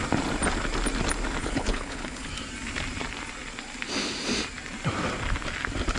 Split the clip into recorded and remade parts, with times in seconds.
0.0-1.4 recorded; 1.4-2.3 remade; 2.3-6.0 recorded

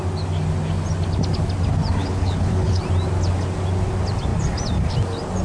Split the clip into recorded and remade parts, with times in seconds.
0.0-2.0 recorded; 2.0-2.8 remade; 2.8-5.4 recorded

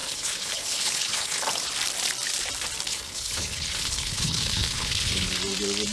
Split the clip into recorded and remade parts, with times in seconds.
0.0-1.4 remade; 1.4-2.9 recorded; 2.9-5.3 remade; 5.3-5.9 recorded

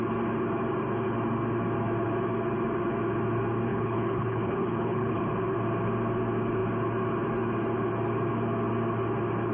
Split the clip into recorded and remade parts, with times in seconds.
0.0-3.7 recorded; 3.7-5.3 remade; 5.3-9.5 recorded

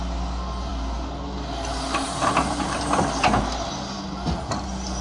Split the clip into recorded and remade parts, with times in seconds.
0.0-5.0 recorded

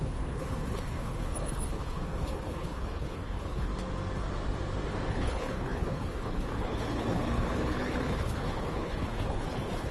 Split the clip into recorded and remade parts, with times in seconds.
0.0-3.7 remade; 3.7-5.1 recorded; 5.1-9.9 remade

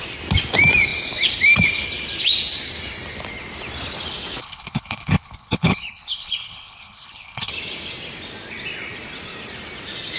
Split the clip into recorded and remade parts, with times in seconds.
0.0-4.4 recorded; 4.4-7.5 remade; 7.5-10.2 recorded

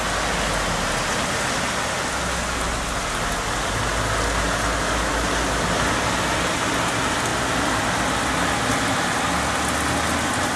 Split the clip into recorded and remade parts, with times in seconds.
0.0-10.6 recorded